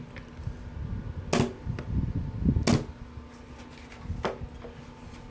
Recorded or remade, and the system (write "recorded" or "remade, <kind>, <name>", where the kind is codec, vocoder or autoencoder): recorded